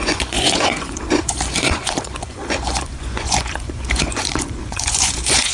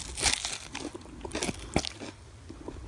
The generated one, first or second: first